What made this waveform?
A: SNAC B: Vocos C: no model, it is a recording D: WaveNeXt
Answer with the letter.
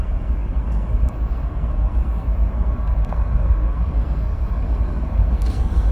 A